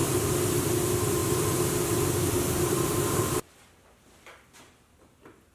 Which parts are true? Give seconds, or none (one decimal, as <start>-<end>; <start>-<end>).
0.6-1.2; 4.5-5.5